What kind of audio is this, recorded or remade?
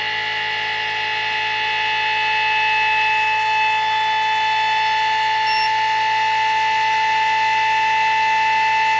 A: recorded